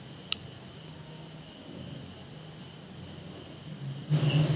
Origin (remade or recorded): recorded